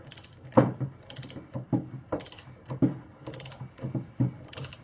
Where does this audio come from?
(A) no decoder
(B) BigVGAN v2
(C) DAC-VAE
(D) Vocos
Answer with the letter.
B